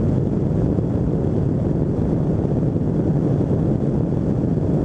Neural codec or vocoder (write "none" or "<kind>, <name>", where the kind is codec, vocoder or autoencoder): none